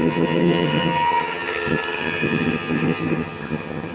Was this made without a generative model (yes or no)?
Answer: no